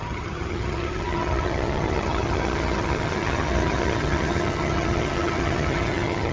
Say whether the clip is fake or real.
fake